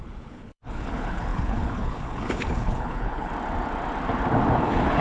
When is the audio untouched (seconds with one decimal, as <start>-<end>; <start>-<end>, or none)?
3.3-4.5

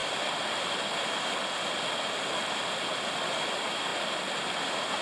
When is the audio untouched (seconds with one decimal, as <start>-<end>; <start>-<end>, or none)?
0.0-5.0

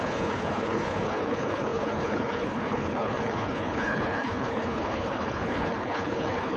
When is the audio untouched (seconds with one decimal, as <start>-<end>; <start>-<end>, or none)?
none

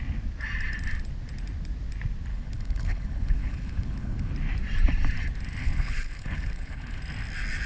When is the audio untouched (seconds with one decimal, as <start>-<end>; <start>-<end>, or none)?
0.0-2.3; 4.3-5.6; 7.0-7.7

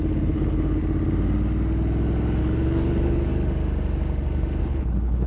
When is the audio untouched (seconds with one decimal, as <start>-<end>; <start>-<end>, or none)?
0.8-2.4; 3.3-4.6